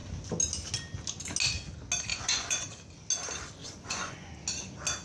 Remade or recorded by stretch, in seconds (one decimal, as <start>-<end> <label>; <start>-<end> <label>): 0.0-2.1 recorded; 2.1-2.7 remade; 2.7-3.6 recorded; 3.6-4.3 remade; 4.3-5.0 recorded